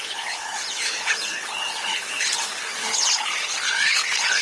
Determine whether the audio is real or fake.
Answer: fake